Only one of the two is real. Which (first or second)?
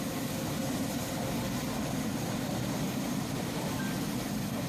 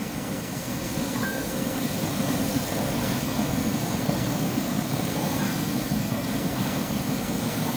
first